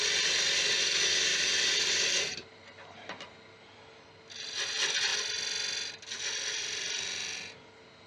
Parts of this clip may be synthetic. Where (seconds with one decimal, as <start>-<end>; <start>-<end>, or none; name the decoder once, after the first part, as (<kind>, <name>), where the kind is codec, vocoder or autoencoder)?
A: 1.3-3.2 (vocoder, BigVGAN v2)

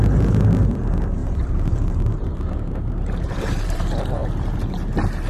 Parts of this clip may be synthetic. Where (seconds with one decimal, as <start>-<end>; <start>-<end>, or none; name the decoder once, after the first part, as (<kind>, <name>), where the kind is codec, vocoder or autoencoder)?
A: 1.2-3.8 (vocoder, BigVGAN v2)

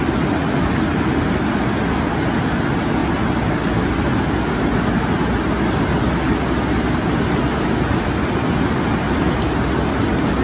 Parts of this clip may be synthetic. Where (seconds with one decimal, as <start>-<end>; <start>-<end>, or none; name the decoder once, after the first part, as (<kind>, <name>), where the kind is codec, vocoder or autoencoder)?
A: none

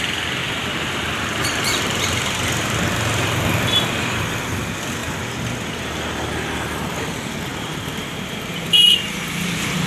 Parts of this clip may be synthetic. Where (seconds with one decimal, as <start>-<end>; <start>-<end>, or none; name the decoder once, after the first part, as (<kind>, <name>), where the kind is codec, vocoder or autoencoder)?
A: 0.4-4.4 (vocoder, BigVGAN v2); 7.5-9.9

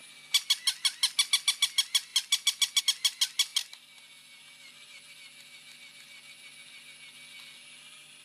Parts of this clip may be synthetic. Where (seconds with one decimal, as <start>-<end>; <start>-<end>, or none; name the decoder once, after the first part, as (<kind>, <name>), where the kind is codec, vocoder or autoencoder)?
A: none

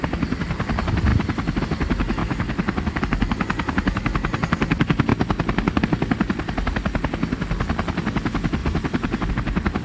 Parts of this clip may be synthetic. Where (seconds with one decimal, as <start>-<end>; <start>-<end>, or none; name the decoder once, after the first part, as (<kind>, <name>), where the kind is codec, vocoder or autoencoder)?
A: 1.1-1.6 (vocoder, BigVGAN v2); 2.2-3.0; 8.6-9.3

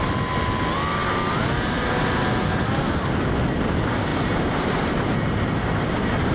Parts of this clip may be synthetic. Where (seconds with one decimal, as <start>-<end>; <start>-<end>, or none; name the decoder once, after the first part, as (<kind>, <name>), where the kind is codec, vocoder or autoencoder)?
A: 4.1-6.3 (vocoder, BigVGAN v2)

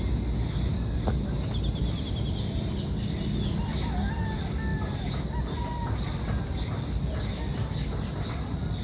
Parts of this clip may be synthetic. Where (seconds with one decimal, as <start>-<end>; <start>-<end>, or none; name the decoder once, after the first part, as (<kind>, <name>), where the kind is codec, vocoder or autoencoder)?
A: 1.8-3.8 (vocoder, BigVGAN v2)